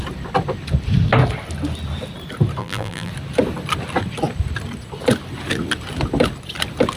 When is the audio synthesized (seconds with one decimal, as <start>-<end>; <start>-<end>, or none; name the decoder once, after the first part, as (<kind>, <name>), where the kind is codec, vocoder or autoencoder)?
2.6-3.1 (vocoder, BigVGAN v2)